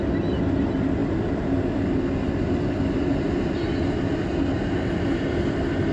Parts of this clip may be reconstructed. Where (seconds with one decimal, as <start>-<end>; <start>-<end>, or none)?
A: none